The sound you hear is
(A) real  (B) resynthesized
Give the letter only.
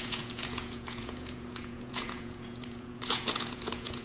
B